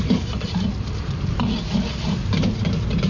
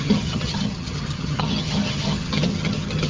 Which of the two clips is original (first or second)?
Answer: first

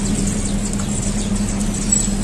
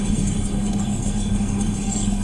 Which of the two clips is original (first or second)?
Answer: first